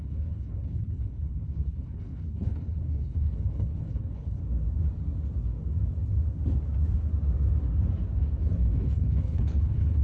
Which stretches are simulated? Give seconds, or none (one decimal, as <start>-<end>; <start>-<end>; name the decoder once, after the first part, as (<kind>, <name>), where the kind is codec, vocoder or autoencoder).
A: 0.0-4.4 (codec, HILCodec); 8.4-10.0